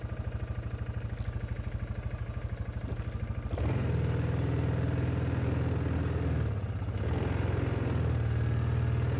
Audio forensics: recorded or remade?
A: recorded